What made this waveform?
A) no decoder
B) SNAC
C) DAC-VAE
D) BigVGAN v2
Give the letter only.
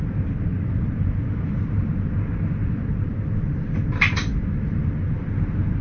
D